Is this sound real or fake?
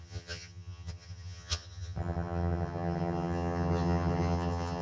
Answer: fake